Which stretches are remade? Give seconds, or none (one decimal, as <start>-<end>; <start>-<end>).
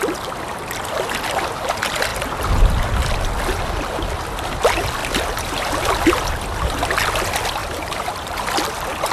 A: 7.6-8.5